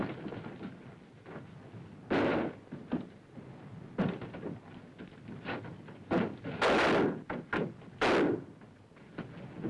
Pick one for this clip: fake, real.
real